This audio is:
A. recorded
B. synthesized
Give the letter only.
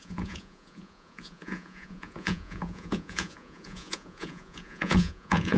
B